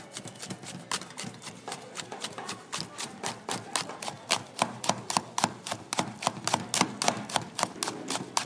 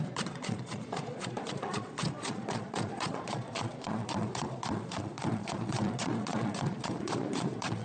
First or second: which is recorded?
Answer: first